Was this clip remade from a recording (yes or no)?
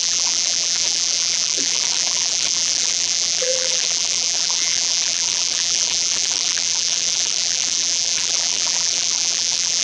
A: yes